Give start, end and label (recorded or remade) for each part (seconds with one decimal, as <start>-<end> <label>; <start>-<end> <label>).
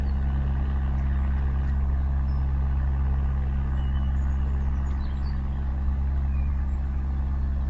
0.0-7.7 recorded